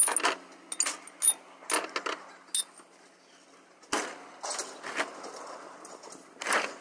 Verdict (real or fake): real